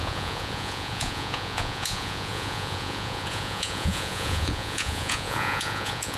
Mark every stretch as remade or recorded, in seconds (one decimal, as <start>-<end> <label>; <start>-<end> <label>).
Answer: 0.0-6.2 remade